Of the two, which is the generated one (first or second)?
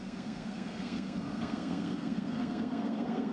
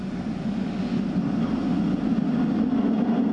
first